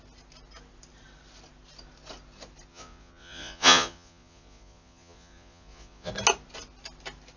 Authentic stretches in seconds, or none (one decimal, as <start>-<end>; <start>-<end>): 0.0-2.7; 6.1-7.4